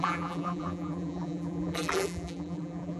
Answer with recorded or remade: remade